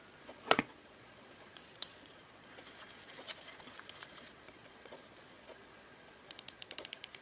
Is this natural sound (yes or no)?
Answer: no